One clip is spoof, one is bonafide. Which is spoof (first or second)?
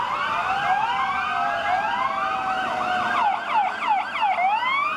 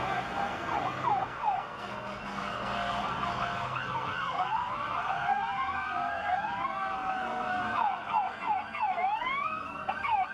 second